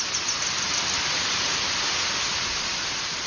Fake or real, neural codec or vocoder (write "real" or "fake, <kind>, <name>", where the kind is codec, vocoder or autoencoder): real